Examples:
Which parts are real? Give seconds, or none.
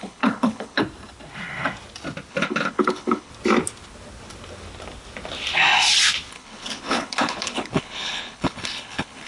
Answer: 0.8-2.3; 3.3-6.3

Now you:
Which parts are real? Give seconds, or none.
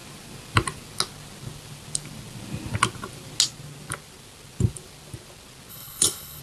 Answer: 0.0-5.7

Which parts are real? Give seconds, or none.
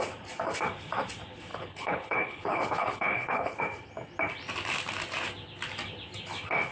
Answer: 0.0-1.5; 3.6-6.7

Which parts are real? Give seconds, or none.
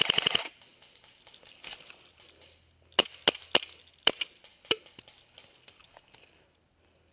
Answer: 0.0-7.1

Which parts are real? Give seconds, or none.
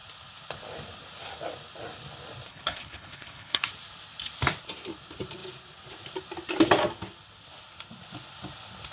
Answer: 0.0-2.5; 3.7-8.9